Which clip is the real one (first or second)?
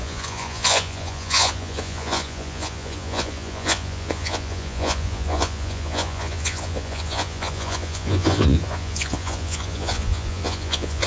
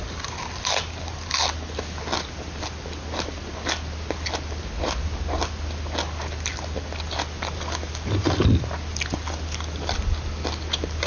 second